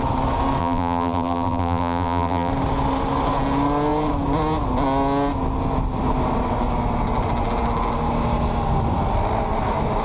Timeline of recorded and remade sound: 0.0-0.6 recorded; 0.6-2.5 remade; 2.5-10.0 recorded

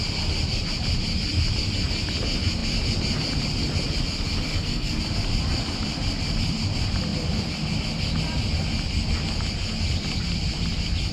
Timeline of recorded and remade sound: 0.0-4.5 recorded; 4.5-5.0 remade; 5.0-11.1 recorded

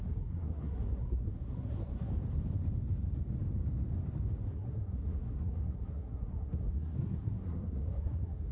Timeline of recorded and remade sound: 0.0-2.1 remade; 2.1-4.5 recorded; 4.5-8.5 remade

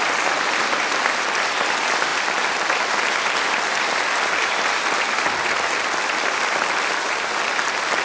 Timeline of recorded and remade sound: 0.0-8.0 recorded

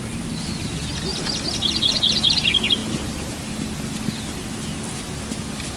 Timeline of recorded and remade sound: 0.0-5.8 recorded

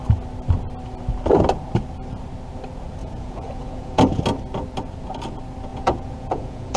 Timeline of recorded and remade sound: 0.0-3.0 recorded; 3.0-4.2 remade; 4.2-5.7 recorded; 5.7-6.8 remade